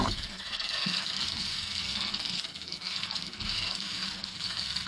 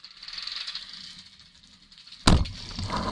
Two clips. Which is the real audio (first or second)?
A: second